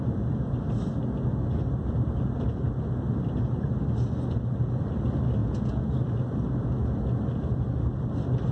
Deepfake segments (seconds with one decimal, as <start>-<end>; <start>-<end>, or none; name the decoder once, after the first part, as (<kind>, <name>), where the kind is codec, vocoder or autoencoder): 5.4-5.9 (vocoder, Vocos)